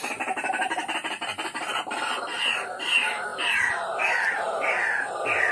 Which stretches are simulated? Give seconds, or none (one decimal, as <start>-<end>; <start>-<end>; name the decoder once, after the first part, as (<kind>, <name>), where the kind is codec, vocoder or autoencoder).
0.0-5.5 (vocoder, BigVGAN v2)